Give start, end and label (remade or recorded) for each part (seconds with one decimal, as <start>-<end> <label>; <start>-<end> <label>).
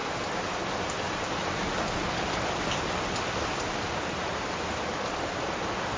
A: 0.0-6.0 recorded